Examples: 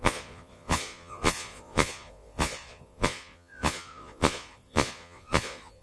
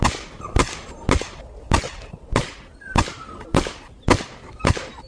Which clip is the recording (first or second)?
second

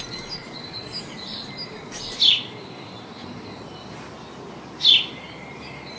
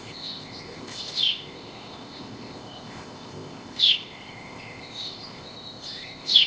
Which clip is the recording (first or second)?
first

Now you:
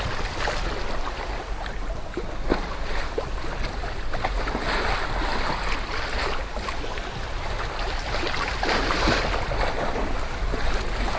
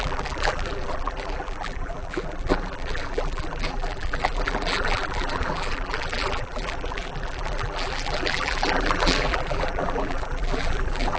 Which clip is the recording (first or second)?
first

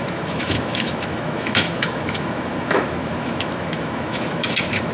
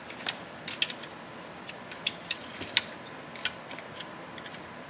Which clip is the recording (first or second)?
second